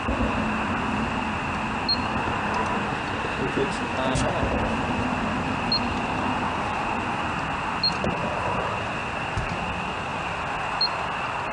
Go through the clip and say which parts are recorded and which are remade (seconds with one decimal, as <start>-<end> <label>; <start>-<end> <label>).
0.0-11.5 recorded